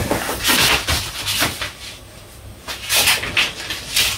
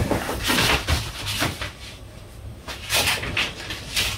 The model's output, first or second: second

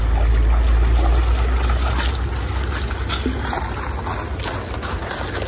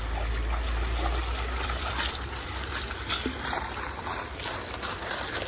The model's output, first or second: second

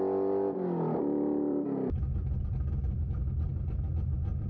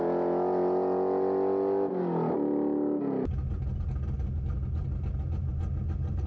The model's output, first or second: first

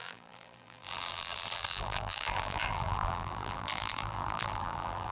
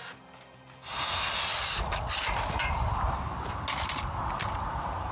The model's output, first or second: first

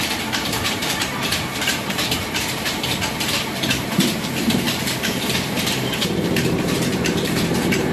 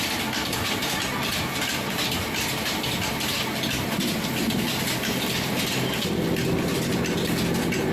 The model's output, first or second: first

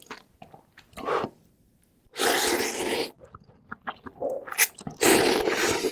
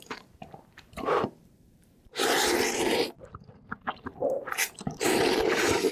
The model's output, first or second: second